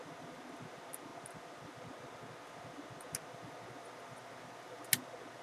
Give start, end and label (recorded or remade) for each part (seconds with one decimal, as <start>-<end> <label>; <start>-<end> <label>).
0.0-5.4 recorded